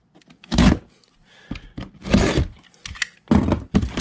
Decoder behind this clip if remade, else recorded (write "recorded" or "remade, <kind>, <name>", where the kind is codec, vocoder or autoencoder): recorded